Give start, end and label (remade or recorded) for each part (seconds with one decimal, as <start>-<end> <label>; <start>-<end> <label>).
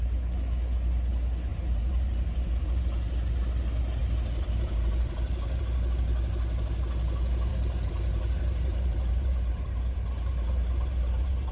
0.0-1.5 recorded; 1.5-2.8 remade; 2.8-4.0 recorded; 4.0-5.6 remade; 5.6-7.5 recorded; 7.5-11.5 remade